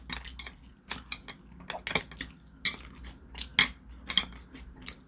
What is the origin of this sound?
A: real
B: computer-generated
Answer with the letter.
A